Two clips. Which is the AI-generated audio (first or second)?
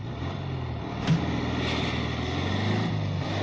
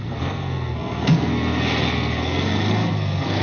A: second